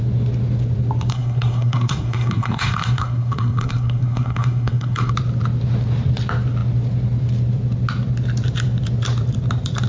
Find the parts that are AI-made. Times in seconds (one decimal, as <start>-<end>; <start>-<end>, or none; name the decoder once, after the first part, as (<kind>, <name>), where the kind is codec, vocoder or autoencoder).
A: 1.1-5.1 (codec, SNAC)